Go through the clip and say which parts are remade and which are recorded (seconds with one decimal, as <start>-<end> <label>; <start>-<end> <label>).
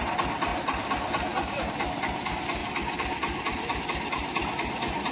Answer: 0.0-0.5 recorded; 0.5-1.6 remade; 1.6-2.6 recorded; 2.6-3.8 remade; 3.8-5.1 recorded